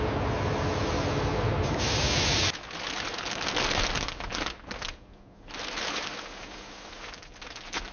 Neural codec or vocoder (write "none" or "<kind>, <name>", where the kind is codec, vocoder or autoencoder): none